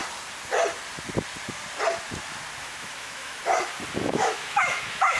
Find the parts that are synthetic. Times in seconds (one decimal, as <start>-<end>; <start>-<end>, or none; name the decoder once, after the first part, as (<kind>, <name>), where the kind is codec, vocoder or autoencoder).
2.6-3.4 (autoencoder, DAC-VAE); 4.0-5.2